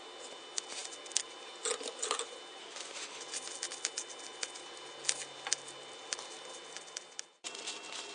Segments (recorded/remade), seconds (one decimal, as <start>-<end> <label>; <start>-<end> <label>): 0.0-2.6 recorded; 2.6-3.2 remade; 3.2-8.1 recorded